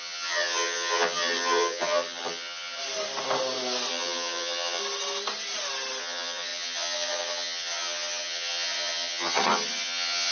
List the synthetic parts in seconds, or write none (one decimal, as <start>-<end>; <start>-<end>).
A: 0.0-2.8; 3.9-4.8; 6.0-10.3

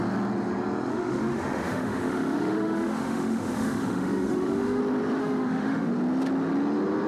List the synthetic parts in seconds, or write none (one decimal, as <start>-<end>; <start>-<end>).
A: 0.9-4.8; 5.2-5.9

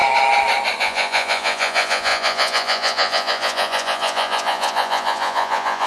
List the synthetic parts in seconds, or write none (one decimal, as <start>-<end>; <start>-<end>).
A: 0.8-5.9